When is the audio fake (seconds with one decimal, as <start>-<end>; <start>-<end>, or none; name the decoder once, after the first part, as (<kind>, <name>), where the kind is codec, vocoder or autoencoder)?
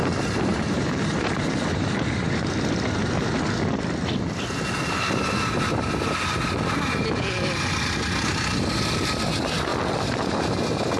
0.5-2.5 (vocoder, BigVGAN v2)